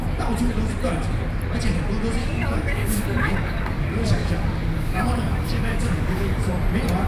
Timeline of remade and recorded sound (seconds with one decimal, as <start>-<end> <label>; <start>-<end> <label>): 0.0-2.2 recorded; 2.2-6.5 remade; 6.5-7.1 recorded

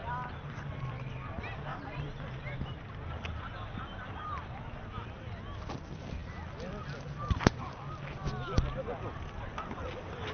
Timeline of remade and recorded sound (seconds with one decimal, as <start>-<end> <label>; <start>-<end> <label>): 0.0-1.1 remade; 1.1-1.7 recorded; 1.7-3.5 remade; 3.5-10.3 recorded